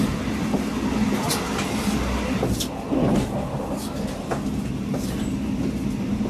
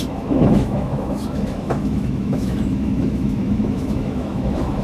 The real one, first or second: first